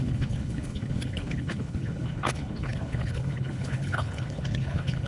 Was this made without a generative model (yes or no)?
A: no